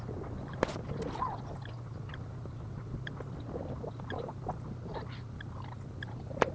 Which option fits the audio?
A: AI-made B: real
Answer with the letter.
B